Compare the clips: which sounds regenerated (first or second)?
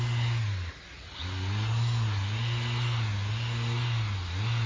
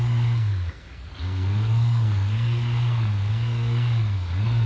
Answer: second